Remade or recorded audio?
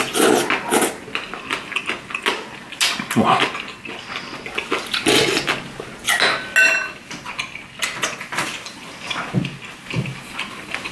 recorded